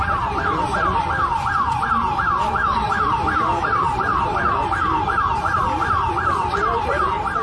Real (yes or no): no